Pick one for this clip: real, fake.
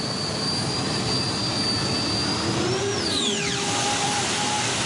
real